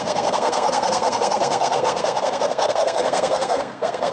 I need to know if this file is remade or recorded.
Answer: remade